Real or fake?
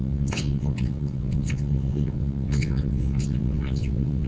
fake